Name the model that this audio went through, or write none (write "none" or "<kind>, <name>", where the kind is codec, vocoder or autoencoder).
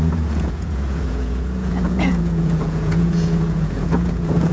vocoder, Vocos